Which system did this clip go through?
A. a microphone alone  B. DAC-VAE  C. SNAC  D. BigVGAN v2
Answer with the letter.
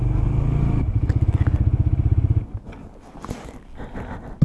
A